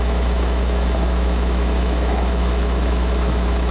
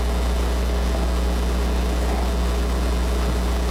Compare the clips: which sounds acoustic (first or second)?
second